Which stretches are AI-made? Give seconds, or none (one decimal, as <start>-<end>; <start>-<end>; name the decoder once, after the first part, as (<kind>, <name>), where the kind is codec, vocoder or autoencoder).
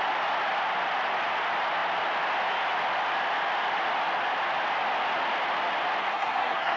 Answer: 6.0-6.8 (codec, SNAC)